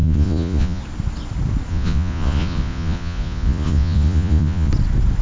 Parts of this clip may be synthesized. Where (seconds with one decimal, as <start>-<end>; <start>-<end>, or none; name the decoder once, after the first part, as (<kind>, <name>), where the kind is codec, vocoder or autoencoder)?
0.0-0.8 (vocoder, Vocos); 1.7-4.7